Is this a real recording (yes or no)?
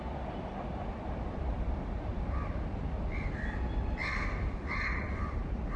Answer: no